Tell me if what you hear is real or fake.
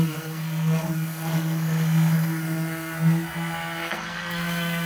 fake